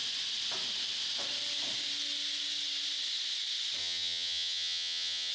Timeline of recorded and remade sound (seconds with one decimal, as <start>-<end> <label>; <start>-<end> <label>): 0.0-3.8 recorded; 3.8-5.3 remade